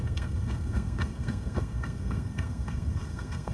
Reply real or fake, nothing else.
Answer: fake